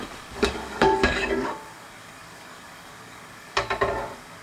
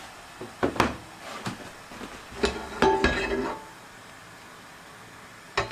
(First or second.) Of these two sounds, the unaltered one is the second